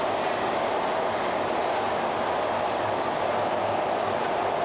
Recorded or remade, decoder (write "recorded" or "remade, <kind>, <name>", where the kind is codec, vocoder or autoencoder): recorded